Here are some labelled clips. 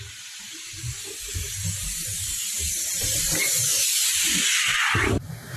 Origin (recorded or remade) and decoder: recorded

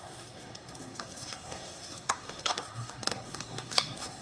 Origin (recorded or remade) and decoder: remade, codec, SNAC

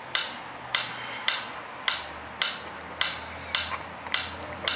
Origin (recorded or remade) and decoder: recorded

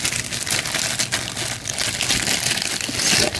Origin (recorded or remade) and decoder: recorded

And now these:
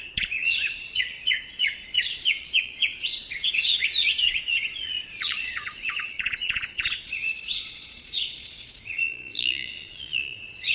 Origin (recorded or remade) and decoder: remade, vocoder, Vocos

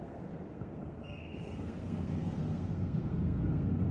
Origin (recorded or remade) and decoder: remade, codec, SNAC